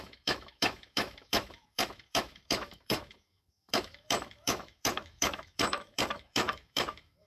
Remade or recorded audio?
remade